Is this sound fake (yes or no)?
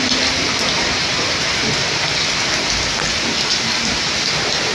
no